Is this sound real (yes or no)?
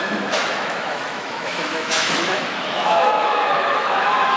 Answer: no